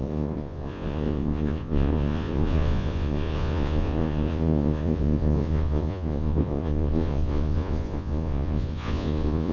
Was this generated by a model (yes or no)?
yes